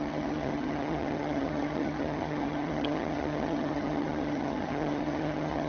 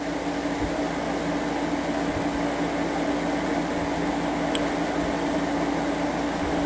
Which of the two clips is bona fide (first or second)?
second